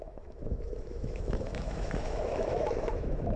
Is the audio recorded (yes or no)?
no